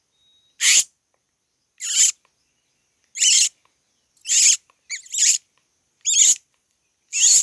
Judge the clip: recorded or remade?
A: recorded